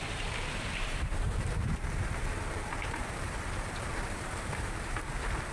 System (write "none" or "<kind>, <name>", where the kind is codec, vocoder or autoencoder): vocoder, BigVGAN v2